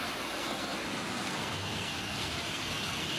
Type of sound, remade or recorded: remade